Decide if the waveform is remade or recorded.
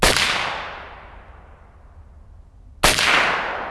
recorded